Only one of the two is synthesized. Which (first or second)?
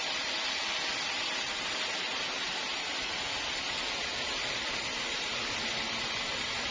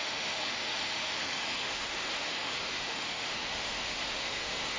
second